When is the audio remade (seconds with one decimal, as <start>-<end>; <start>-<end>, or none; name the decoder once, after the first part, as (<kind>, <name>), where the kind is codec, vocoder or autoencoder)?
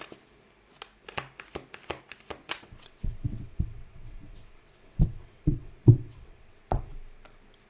2.4-6.6 (vocoder, WaveNeXt)